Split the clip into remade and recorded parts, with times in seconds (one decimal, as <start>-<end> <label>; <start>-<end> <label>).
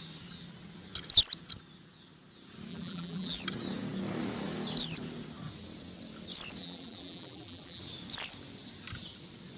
0.0-2.7 recorded; 2.7-3.4 remade; 3.4-6.6 recorded; 6.6-7.8 remade; 7.8-9.6 recorded